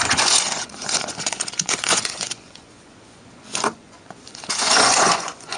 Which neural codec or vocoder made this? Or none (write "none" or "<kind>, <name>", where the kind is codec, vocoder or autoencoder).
vocoder, Vocos